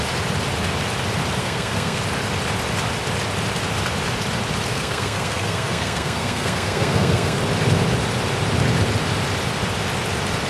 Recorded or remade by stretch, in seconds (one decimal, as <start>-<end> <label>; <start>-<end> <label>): 0.0-1.4 recorded; 1.4-2.0 remade; 2.0-4.7 recorded; 4.7-7.4 remade; 7.4-10.5 recorded